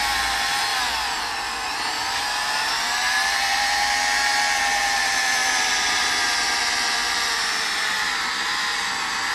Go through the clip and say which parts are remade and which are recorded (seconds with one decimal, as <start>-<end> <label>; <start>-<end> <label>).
0.0-9.3 remade